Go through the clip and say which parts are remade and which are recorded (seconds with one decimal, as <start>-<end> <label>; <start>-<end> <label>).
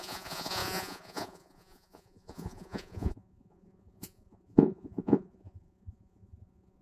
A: 0.0-6.8 remade